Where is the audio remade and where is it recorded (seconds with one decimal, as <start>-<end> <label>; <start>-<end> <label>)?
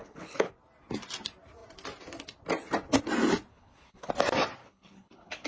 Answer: 0.0-0.5 remade; 0.5-3.5 recorded; 3.5-4.1 remade; 4.1-4.6 recorded; 4.6-5.5 remade